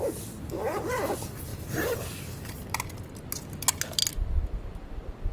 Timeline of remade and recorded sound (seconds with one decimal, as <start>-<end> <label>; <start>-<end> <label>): 0.0-1.5 recorded; 1.5-2.5 remade; 2.5-5.3 recorded